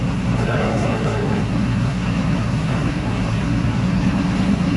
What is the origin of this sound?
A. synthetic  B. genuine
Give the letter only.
A